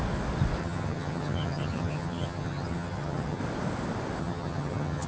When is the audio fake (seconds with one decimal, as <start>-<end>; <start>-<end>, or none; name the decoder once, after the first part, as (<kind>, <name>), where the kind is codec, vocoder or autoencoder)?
0.6-3.4 (vocoder, HiFi-GAN); 4.2-5.1

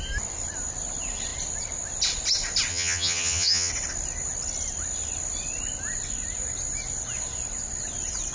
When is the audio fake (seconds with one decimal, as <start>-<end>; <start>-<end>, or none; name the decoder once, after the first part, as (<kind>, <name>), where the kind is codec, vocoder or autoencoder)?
2.7-3.7 (vocoder, HiFi-GAN)

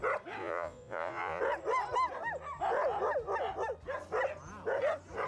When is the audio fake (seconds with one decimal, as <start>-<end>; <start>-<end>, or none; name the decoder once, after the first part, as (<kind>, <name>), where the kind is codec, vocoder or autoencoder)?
0.4-1.4 (vocoder, Vocos)

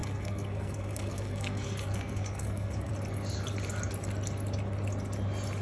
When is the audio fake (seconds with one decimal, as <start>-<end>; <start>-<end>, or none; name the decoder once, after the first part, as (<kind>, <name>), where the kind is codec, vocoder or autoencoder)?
0.0-2.9 (codec, SNAC)

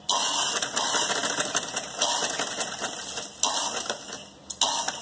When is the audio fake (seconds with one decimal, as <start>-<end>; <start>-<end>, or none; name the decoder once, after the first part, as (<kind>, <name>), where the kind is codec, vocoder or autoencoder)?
none

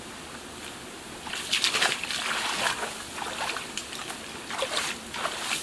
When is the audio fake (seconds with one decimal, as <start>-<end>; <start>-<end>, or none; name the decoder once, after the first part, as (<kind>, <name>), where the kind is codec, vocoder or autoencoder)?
none

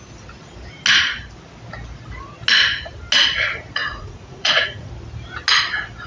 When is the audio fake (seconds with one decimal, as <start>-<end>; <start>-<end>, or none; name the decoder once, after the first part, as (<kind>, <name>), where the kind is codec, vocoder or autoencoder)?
3.8-4.9 (vocoder, Vocos)